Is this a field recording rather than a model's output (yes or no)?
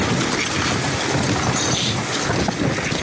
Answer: yes